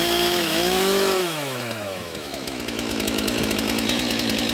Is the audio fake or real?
fake